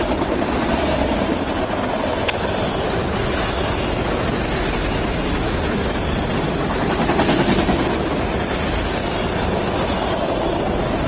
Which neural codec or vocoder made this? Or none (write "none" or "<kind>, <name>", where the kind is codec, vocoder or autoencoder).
none